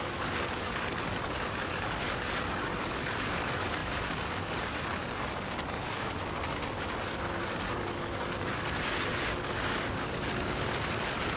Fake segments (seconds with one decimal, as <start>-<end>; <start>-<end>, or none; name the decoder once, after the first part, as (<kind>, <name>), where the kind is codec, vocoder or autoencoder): 0.0-11.4 (codec, DAC)